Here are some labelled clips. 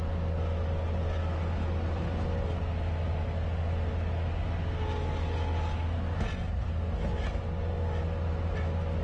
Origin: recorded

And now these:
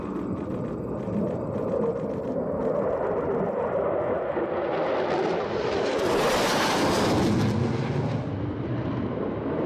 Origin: recorded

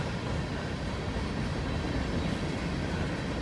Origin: recorded